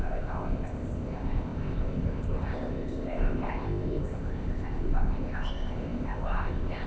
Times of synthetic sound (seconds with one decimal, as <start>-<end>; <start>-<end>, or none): 0.0-6.9